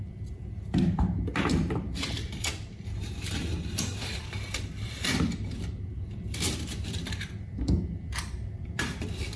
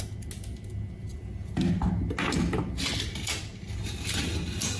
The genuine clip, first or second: second